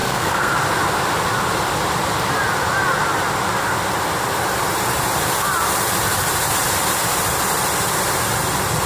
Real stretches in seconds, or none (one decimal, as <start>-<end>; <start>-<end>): 0.5-8.9